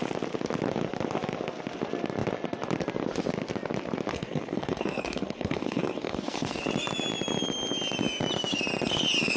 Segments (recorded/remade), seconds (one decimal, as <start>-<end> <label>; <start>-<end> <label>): 0.0-4.1 recorded; 4.1-6.6 remade; 6.6-9.4 recorded